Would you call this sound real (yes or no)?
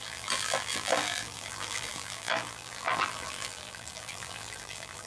no